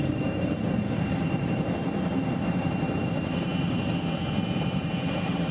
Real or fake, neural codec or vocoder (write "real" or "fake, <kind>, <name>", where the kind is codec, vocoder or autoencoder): fake, vocoder, BigVGAN v2